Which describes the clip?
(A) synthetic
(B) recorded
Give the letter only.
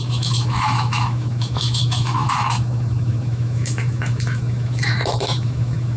A